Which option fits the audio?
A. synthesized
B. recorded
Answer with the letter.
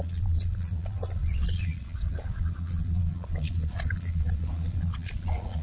A